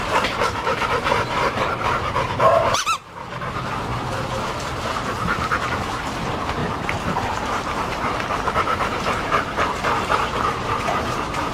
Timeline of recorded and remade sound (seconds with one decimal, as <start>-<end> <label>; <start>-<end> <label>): 0.0-2.8 remade; 2.8-6.6 recorded; 6.6-11.5 remade